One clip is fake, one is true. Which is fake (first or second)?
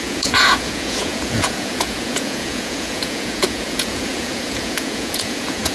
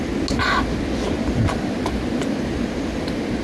first